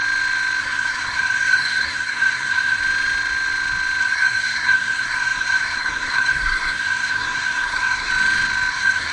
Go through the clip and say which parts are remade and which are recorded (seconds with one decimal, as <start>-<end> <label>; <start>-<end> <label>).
0.0-0.6 recorded; 0.6-2.8 remade; 2.8-4.0 recorded; 4.0-8.1 remade; 8.1-8.7 recorded; 8.7-9.1 remade